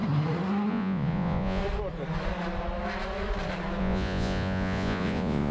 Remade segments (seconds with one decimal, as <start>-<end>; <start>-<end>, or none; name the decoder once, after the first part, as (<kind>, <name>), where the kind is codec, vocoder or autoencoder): 0.7-1.6 (vocoder, Vocos); 3.8-5.5